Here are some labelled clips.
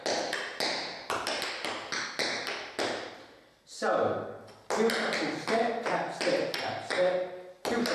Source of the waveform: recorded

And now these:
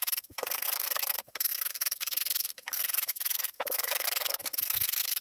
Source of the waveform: remade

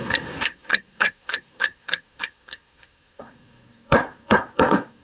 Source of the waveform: remade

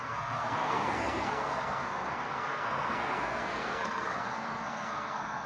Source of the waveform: remade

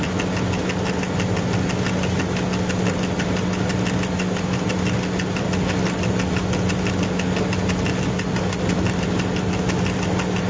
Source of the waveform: recorded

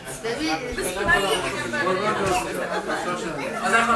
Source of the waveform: recorded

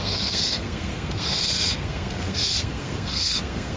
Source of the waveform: remade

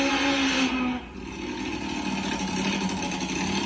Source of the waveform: recorded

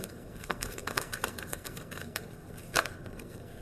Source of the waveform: remade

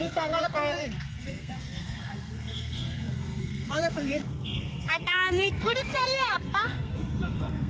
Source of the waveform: remade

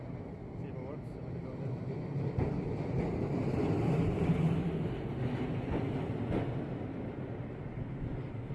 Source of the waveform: recorded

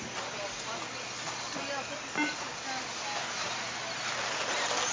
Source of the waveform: recorded